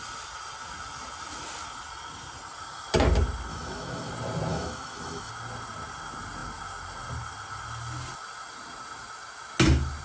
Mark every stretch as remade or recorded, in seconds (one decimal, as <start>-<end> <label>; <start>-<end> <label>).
0.0-3.5 recorded; 3.5-4.1 remade; 4.1-4.5 recorded; 4.5-5.3 remade; 5.3-10.0 recorded